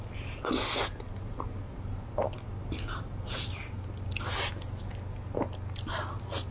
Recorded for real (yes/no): yes